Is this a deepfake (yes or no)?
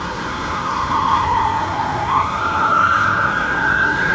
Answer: yes